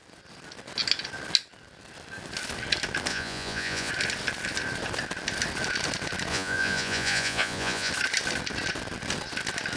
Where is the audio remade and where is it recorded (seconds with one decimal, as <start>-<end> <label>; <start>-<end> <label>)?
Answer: 0.0-3.1 recorded; 3.1-3.9 remade; 3.9-6.3 recorded; 6.3-7.9 remade; 7.9-9.8 recorded